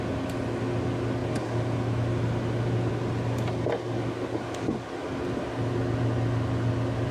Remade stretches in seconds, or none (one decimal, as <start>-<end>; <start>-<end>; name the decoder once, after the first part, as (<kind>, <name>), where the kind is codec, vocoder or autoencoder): none